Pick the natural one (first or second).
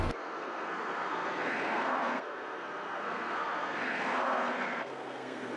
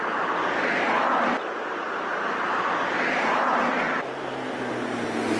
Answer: second